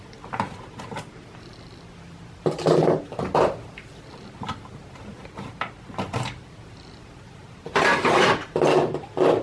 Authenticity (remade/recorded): recorded